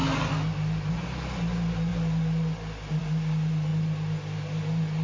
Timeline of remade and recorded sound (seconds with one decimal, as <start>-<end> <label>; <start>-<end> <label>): 0.0-5.0 recorded